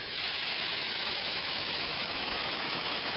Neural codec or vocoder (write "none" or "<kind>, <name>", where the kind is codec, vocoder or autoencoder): autoencoder, DAC-VAE